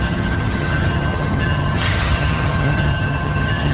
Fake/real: fake